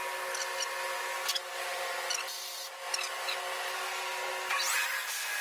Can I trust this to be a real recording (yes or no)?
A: yes